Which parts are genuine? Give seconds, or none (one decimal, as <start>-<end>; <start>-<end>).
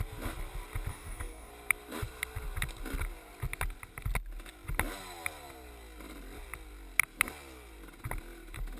0.0-0.9; 1.5-8.8